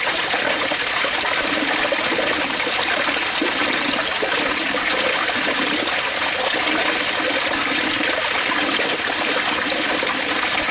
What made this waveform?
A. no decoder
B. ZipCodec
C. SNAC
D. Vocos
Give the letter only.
A